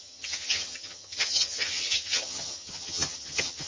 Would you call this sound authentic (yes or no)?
no